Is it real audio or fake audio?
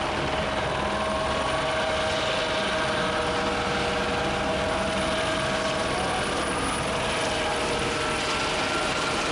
real